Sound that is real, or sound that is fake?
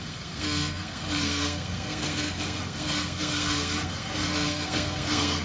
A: fake